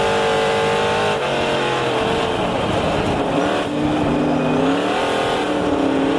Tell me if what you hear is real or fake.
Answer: real